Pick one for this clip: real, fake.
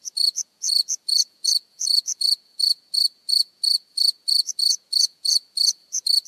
fake